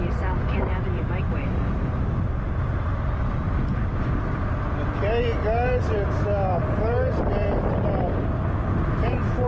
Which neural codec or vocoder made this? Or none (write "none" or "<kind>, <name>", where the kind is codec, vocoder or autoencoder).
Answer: none